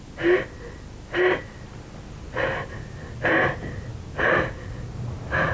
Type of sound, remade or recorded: recorded